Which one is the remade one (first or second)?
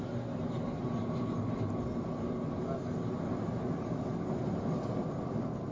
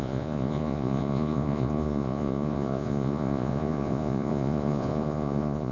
second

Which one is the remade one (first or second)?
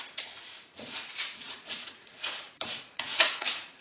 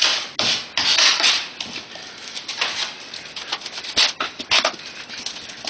first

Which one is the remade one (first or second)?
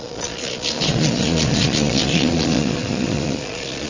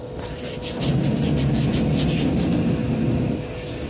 first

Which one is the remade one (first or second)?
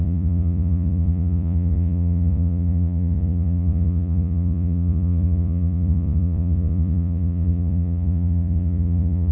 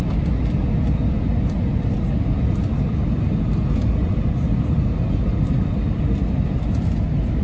first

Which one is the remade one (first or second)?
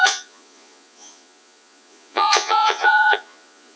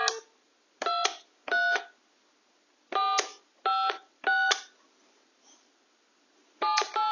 first